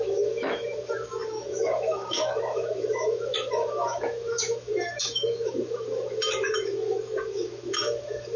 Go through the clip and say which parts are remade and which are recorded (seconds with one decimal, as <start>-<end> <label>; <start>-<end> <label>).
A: 0.0-8.4 remade